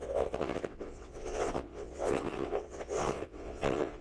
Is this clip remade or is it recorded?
remade